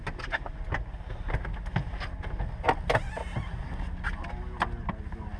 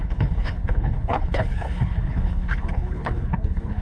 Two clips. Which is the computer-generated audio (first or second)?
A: second